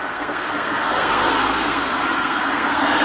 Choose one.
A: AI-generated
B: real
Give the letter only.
A